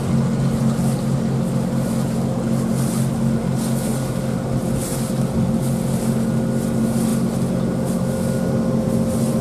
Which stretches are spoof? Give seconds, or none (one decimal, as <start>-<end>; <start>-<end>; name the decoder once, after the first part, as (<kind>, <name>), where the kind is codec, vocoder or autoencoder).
none